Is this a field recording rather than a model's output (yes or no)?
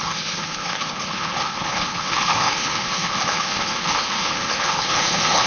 no